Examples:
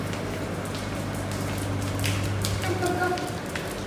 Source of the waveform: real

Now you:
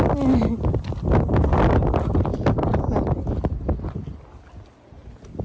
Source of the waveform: real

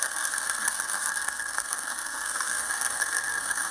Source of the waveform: fake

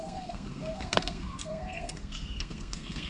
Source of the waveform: fake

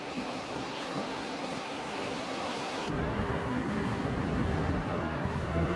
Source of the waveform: fake